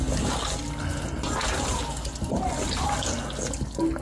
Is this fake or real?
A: real